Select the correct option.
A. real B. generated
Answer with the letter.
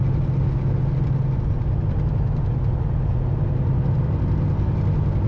A